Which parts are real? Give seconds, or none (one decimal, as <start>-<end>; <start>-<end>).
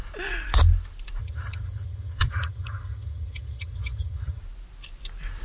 0.0-1.2; 4.4-5.4